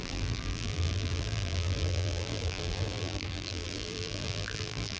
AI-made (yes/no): yes